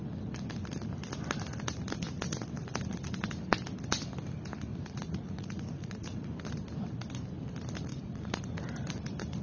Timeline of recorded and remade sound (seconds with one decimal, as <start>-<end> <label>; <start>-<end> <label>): 0.0-4.7 recorded; 4.7-6.3 remade; 6.3-7.9 recorded; 7.9-8.4 remade; 8.4-9.4 recorded